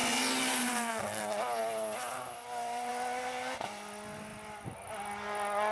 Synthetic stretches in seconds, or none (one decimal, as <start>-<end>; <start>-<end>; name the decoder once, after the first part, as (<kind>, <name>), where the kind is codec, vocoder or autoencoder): 1.6-2.9 (vocoder, BigVGAN v2); 4.3-4.9